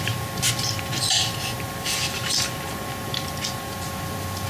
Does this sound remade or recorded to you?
recorded